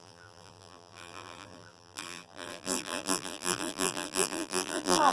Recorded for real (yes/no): no